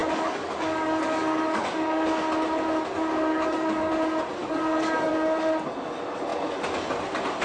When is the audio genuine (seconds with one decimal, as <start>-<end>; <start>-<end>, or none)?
2.2-3.3; 3.9-4.4; 5.1-7.4